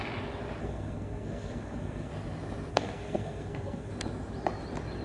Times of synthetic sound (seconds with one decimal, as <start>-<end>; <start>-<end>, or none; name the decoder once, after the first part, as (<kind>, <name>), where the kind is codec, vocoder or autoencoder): 0.6-2.1 (codec, SNAC); 2.7-3.9